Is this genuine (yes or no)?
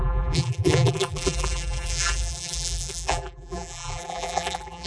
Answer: no